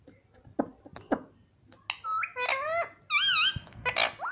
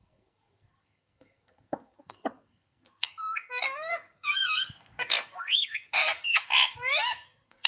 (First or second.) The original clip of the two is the first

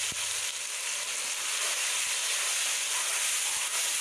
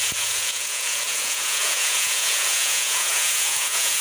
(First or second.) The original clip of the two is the first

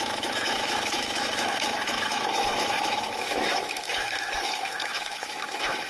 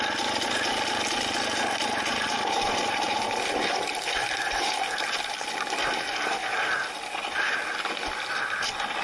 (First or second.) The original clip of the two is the second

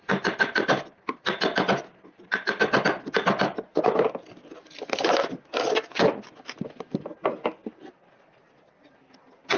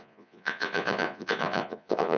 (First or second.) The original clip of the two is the first